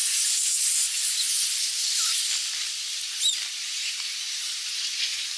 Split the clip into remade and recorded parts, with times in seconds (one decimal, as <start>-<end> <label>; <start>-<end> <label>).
0.0-0.6 remade; 0.6-1.0 recorded; 1.0-3.5 remade; 3.5-5.4 recorded